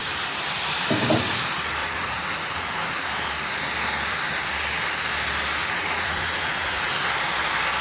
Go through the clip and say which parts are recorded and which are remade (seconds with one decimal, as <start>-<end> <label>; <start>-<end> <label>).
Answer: 0.0-1.8 recorded; 1.8-3.1 remade; 3.1-5.6 recorded; 5.6-6.8 remade; 6.8-7.8 recorded